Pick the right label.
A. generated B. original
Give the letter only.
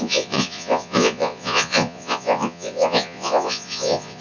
A